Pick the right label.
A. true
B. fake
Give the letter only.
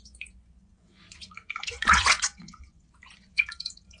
B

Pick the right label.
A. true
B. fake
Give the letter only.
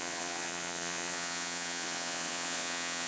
B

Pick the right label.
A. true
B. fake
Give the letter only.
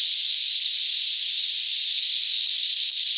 A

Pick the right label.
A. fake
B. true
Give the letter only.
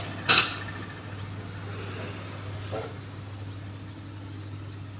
B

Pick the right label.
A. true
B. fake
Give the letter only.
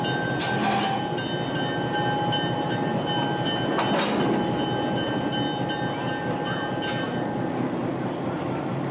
A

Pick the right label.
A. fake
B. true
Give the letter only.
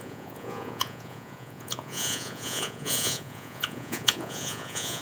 A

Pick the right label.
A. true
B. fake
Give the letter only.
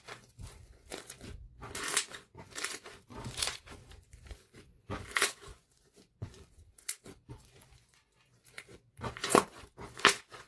B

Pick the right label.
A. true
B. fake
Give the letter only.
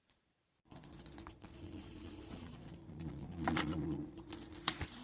B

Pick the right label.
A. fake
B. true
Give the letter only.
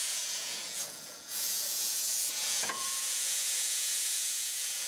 A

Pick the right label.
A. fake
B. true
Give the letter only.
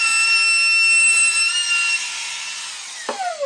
B